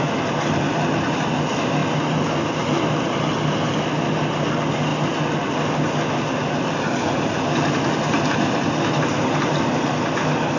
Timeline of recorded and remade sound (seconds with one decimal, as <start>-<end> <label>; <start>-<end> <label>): 0.0-10.6 recorded

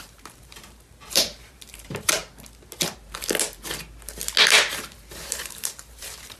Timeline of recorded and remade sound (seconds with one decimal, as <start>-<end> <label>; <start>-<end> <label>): 0.0-2.2 remade; 2.2-4.7 recorded; 4.7-6.4 remade

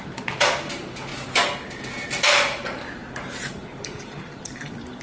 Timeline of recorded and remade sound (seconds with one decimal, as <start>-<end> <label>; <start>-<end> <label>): 0.0-1.1 remade; 1.1-2.1 recorded; 2.1-5.0 remade

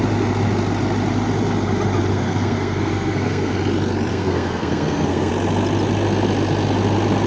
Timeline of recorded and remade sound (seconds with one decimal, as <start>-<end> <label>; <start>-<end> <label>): 0.0-2.1 recorded; 2.1-3.6 remade; 3.6-4.1 recorded; 4.1-5.3 remade; 5.3-7.3 recorded

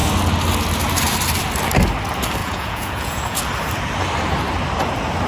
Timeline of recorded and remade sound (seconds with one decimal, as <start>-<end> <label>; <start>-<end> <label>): 0.0-2.4 recorded; 2.4-3.4 remade; 3.4-5.3 recorded

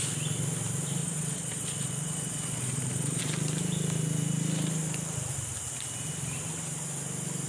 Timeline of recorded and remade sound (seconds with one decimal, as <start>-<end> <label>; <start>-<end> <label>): 0.0-1.0 recorded; 1.0-3.2 remade; 3.2-7.5 recorded

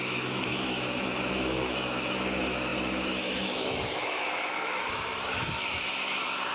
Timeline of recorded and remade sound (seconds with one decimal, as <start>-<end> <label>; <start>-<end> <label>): 0.0-6.5 remade